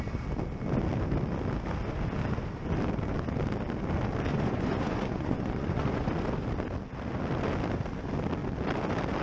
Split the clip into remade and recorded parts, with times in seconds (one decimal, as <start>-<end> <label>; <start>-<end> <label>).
0.0-4.3 recorded; 4.3-6.1 remade; 6.1-9.2 recorded

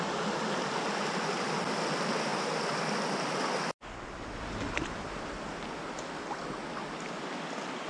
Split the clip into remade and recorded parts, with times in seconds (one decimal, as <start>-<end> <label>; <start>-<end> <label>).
0.0-7.9 recorded

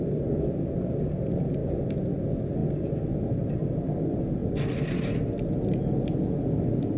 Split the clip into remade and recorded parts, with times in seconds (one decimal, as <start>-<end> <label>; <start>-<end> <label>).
0.0-7.0 recorded